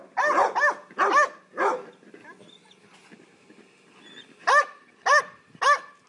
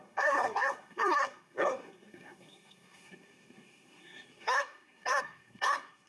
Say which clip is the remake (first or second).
second